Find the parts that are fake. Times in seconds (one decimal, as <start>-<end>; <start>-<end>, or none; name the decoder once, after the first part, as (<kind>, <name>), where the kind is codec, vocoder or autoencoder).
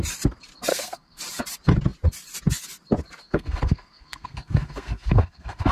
0.7-1.2 (codec, SNAC); 3.2-5.7